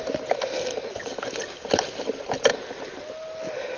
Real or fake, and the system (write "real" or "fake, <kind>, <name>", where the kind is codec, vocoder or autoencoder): real